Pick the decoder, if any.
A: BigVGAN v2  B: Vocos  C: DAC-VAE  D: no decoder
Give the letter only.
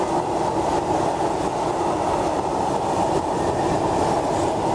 D